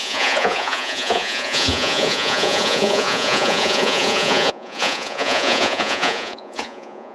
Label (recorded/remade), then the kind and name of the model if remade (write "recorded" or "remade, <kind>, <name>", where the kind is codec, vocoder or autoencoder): remade, vocoder, Vocos